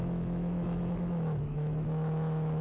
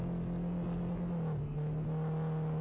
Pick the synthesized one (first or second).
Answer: first